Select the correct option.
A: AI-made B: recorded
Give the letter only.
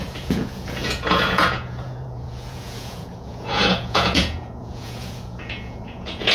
A